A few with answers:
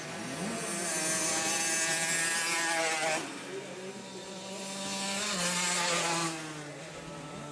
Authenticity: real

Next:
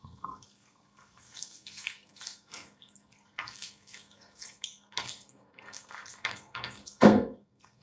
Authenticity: fake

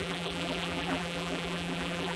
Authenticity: fake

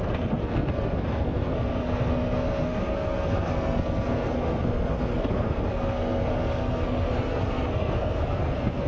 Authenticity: fake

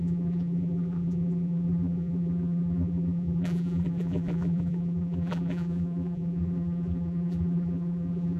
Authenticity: fake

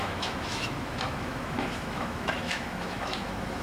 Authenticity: fake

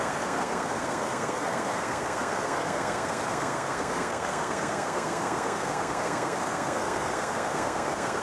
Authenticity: fake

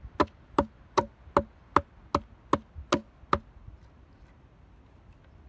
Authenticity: real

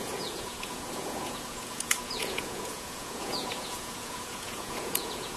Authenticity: fake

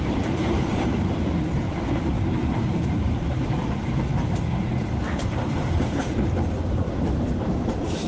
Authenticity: fake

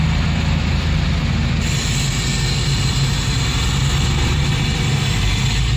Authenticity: real